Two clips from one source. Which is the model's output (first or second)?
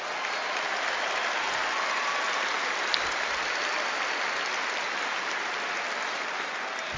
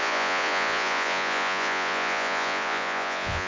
second